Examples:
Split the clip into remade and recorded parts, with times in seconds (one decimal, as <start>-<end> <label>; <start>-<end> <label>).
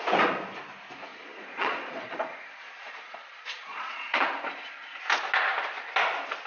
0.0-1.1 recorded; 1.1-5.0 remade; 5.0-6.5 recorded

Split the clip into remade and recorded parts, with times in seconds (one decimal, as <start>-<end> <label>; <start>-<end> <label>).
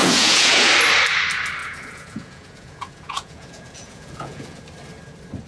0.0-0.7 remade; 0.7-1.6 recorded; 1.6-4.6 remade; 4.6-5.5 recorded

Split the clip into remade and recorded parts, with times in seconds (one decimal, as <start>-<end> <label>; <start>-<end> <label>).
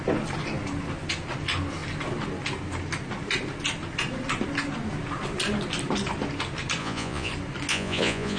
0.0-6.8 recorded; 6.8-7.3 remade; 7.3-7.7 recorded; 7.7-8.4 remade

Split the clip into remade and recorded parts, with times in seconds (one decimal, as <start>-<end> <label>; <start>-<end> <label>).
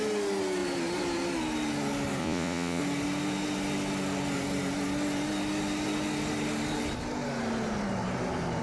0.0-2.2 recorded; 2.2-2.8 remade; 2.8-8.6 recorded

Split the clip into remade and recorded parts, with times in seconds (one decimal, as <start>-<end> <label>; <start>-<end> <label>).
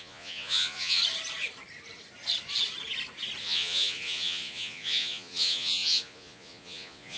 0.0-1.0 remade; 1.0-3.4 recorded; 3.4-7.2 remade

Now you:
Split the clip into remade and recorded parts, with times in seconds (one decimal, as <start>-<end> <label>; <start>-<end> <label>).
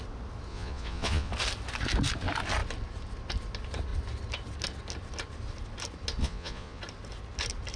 0.0-0.5 recorded; 0.5-1.3 remade; 1.3-6.2 recorded; 6.2-6.8 remade; 6.8-7.8 recorded